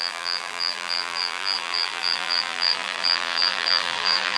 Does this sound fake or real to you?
fake